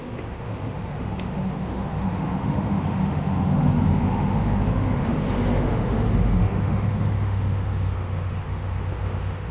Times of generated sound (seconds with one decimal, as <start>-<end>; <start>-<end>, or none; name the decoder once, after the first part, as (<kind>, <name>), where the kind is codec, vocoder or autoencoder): 0.0-9.5 (autoencoder, DAC-VAE)